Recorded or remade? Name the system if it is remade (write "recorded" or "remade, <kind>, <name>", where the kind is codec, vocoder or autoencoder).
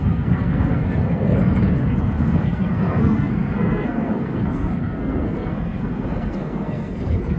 remade, codec, SNAC